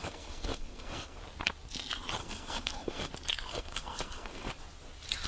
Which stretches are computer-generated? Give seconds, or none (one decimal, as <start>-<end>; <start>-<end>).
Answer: 0.0-1.2; 2.2-3.1; 3.5-4.5